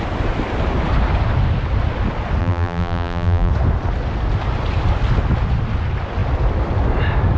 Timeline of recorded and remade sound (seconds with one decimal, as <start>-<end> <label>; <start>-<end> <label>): 0.0-2.4 recorded; 2.4-3.5 remade; 3.5-7.4 recorded